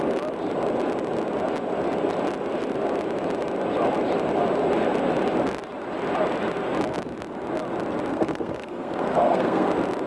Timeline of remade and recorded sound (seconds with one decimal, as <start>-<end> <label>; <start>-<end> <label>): 0.0-8.1 recorded; 8.1-9.7 remade; 9.7-10.1 recorded